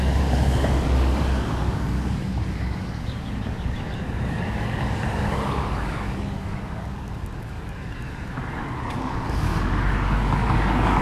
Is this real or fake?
fake